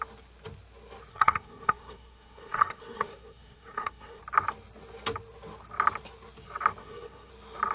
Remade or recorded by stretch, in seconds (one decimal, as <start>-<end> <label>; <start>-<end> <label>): 0.0-1.1 recorded; 1.1-4.2 remade; 4.2-6.8 recorded; 6.8-7.3 remade; 7.3-7.7 recorded